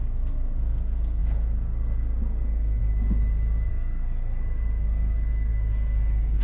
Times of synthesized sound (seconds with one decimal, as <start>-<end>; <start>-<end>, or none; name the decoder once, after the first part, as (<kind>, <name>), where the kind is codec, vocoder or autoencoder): 0.0-6.4 (codec, SNAC)